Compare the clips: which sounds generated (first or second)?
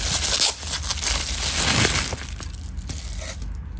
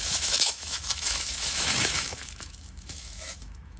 second